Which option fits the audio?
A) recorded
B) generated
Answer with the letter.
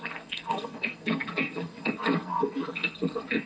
B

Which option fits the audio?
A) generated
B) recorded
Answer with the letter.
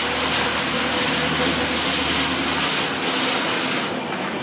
B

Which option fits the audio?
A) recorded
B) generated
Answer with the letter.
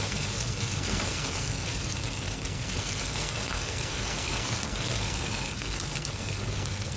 B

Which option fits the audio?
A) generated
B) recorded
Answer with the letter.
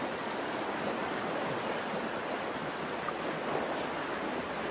B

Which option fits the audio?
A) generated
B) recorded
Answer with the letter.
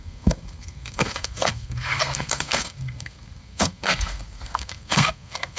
A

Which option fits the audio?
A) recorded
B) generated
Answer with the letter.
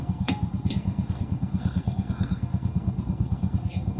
B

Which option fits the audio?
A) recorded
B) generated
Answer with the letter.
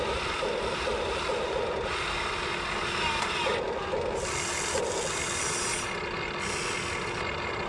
A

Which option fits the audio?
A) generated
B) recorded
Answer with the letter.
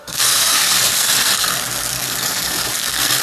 A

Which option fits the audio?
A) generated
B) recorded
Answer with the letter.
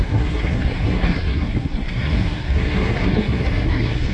A